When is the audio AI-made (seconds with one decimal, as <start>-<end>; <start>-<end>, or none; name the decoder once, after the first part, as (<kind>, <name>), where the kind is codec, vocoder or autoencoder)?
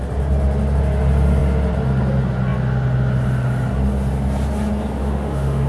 5.0-5.7 (autoencoder, DAC-VAE)